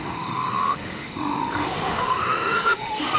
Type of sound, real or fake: fake